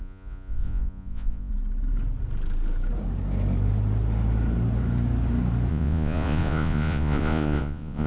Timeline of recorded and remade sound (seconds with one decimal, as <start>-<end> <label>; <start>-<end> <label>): 0.0-1.5 remade; 1.5-5.7 recorded; 5.7-8.1 remade